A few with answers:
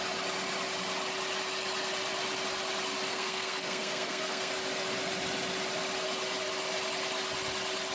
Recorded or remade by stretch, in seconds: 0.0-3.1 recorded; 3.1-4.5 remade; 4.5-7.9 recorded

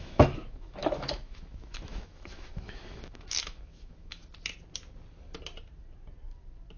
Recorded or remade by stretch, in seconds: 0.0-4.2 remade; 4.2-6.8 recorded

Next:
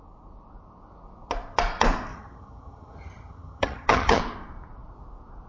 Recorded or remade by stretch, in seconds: 0.0-2.1 recorded; 2.1-4.2 remade; 4.2-5.5 recorded

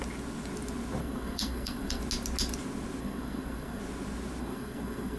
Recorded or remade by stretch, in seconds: 0.0-1.0 recorded; 1.0-2.0 remade; 2.0-3.0 recorded; 3.0-3.8 remade; 3.8-4.4 recorded; 4.4-5.2 remade

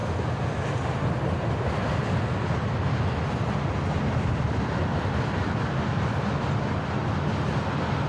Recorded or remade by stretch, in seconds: 0.0-8.1 recorded

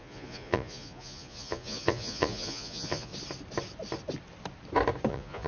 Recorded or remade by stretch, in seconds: 0.0-3.1 remade; 3.1-5.1 recorded; 5.1-5.5 remade

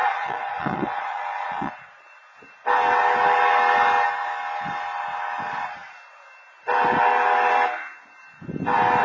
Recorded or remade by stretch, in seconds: 0.0-1.7 remade; 1.7-9.0 recorded

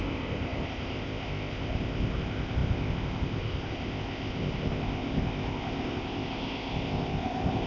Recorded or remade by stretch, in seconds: 0.0-7.7 remade